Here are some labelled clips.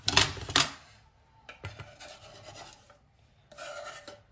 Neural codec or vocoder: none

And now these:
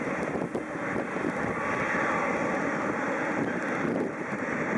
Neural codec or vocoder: none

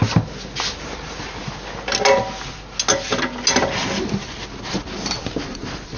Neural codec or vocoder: none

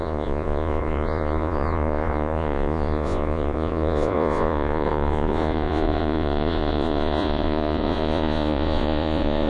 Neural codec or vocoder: vocoder, Vocos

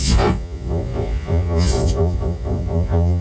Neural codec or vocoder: vocoder, Vocos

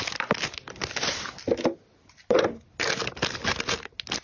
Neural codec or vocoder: none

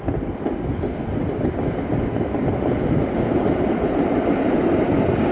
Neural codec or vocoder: none